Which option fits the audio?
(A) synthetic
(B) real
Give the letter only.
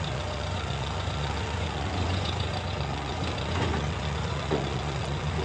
A